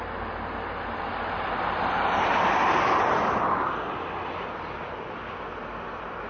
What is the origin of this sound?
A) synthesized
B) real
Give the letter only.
B